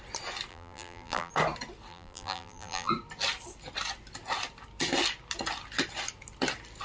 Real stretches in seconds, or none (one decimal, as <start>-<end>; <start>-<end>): 0.0-0.5; 1.3-1.9; 2.9-6.8